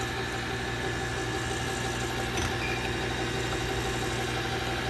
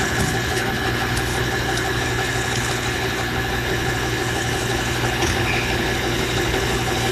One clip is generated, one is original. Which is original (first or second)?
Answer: first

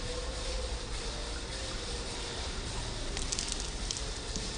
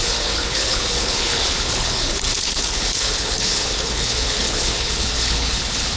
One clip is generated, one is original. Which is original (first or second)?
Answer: first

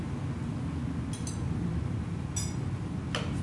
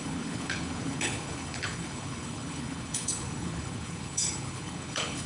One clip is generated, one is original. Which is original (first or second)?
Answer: first